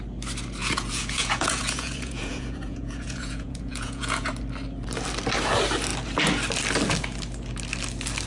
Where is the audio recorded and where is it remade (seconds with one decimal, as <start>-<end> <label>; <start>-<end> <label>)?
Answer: 0.0-0.6 recorded; 0.6-4.3 remade; 4.3-8.3 recorded